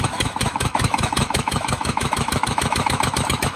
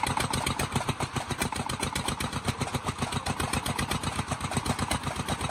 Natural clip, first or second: second